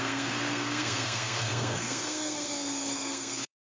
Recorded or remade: remade